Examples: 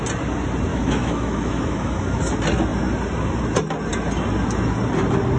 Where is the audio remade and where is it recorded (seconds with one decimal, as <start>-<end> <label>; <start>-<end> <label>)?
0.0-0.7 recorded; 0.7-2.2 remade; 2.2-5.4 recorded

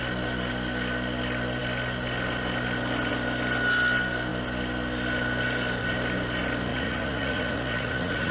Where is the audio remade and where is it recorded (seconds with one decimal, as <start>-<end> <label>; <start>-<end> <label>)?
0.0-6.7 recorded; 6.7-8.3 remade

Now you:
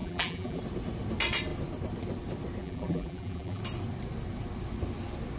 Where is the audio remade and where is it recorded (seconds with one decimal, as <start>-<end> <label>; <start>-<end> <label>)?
0.0-0.6 remade; 0.6-2.6 recorded; 2.6-3.6 remade; 3.6-5.4 recorded